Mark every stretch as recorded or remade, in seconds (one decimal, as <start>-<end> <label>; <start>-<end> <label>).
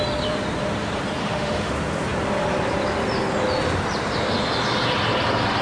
0.0-1.2 recorded; 1.2-1.7 remade; 1.7-5.6 recorded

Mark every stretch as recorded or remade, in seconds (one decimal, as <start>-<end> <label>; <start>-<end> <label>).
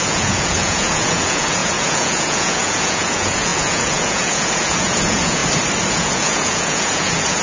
0.0-5.4 remade; 5.4-5.9 recorded; 5.9-7.4 remade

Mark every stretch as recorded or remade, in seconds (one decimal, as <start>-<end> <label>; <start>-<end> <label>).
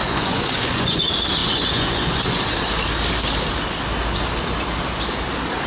0.0-1.0 remade; 1.0-1.4 recorded; 1.4-2.4 remade; 2.4-5.7 recorded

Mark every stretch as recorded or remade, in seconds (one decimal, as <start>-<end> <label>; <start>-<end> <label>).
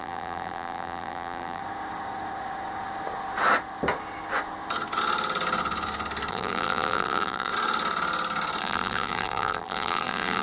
0.0-1.6 remade; 1.6-6.3 recorded; 6.3-7.5 remade; 7.5-8.6 recorded; 8.6-10.4 remade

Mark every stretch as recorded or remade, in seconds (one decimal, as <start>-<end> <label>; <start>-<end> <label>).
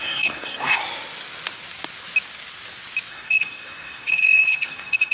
0.0-0.8 remade; 0.8-3.1 recorded; 3.1-5.1 remade